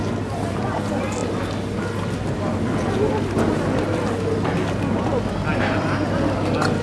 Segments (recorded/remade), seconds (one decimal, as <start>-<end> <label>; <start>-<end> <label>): 0.0-6.8 recorded